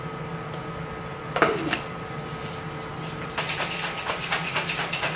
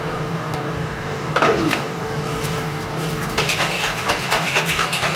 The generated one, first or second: second